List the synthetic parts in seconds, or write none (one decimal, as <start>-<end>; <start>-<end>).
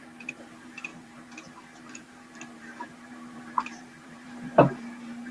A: 0.0-5.3